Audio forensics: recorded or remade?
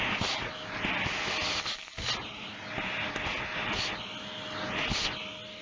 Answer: recorded